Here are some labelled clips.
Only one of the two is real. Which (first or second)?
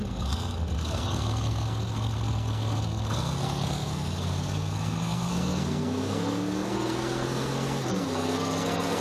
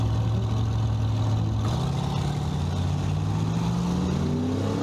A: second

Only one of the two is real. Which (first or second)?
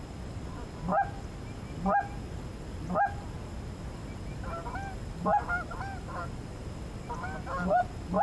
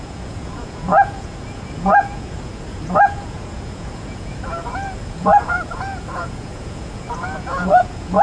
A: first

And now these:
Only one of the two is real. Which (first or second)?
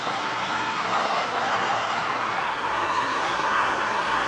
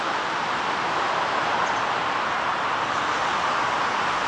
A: second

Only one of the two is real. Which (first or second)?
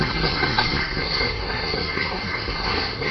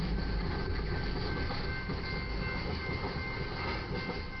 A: second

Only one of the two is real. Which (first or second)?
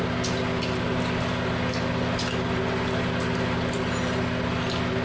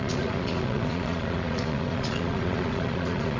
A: first